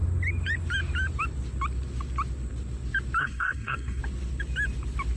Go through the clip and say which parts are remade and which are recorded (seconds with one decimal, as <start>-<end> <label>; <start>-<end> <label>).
0.0-3.2 recorded; 3.2-4.0 remade; 4.0-5.2 recorded